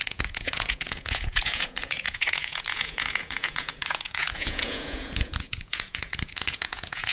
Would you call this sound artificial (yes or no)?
yes